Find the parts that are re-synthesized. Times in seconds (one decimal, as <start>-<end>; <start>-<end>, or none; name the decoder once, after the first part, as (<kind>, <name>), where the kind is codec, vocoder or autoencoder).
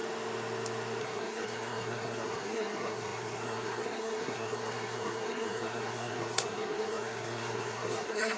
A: 1.0-8.4 (codec, SNAC)